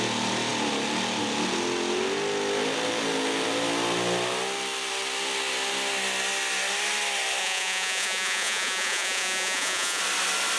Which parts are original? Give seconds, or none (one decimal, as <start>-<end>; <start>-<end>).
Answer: 0.0-7.4; 10.0-10.6

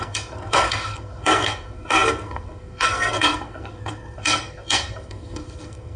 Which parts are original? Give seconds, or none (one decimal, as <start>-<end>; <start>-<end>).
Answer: none

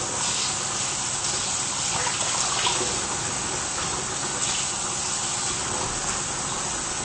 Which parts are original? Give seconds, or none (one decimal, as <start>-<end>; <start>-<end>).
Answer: 0.0-7.0

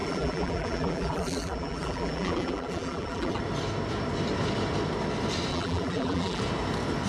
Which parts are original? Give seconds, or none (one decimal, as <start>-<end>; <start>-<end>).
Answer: 3.4-5.5; 6.4-7.1

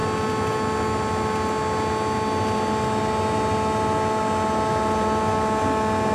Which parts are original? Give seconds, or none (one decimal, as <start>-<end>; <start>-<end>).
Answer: 0.0-6.1